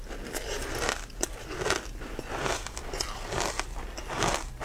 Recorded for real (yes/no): yes